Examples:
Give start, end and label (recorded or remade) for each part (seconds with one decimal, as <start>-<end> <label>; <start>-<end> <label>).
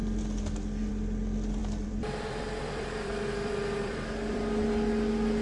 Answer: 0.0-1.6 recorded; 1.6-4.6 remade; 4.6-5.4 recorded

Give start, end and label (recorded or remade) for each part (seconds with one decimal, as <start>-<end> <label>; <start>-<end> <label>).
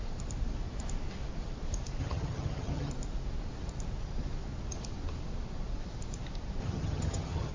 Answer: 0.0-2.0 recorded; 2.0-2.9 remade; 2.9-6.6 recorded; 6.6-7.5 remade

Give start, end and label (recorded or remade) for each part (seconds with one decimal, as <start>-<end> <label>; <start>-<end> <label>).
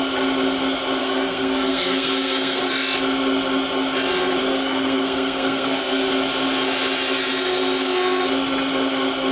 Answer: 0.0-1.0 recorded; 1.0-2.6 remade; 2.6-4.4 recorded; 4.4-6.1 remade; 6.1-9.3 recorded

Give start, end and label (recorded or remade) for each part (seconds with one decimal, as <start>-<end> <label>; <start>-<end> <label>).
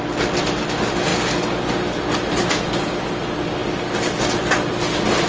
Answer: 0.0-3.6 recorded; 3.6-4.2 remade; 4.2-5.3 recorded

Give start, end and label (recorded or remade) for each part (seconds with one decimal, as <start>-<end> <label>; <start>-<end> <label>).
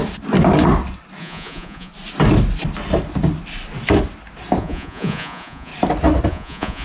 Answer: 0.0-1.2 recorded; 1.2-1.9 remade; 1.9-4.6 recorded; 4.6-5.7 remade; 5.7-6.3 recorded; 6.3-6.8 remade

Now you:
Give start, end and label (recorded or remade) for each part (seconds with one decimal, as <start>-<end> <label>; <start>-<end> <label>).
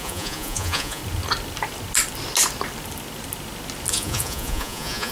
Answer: 0.0-1.0 remade; 1.0-3.9 recorded; 3.9-5.1 remade